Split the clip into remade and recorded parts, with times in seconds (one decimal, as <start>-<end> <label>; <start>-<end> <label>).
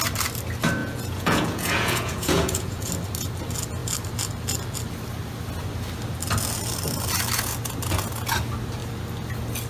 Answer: 0.0-0.8 recorded; 0.8-2.9 remade; 2.9-9.7 recorded